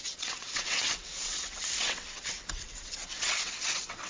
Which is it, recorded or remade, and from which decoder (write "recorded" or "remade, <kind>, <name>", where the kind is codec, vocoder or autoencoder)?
remade, vocoder, WaveNeXt